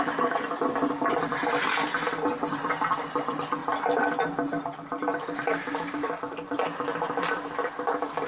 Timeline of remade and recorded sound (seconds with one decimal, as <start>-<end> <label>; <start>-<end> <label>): 0.0-2.2 remade; 2.2-2.7 recorded; 2.7-3.6 remade; 3.6-7.2 recorded; 7.2-8.3 remade